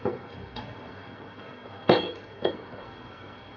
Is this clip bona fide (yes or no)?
no